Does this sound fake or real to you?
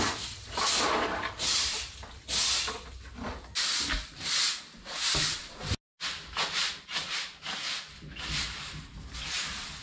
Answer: real